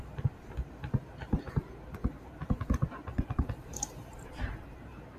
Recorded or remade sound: remade